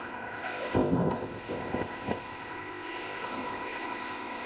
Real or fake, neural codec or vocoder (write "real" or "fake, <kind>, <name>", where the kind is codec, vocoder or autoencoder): fake, codec, ZipCodec